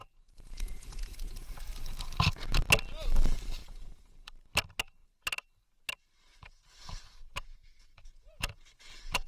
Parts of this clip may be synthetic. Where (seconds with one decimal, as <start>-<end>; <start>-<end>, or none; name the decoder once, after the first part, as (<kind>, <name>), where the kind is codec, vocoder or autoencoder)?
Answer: 0.0-1.7 (vocoder, Vocos); 3.6-4.3; 6.3-9.3